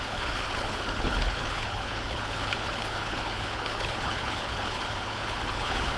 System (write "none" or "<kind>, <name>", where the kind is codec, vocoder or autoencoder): codec, HILCodec